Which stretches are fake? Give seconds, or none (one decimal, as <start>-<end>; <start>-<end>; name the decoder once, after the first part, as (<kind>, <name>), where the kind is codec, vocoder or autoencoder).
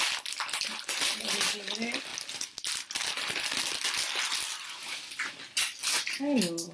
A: none